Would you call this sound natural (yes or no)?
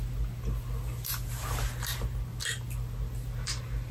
yes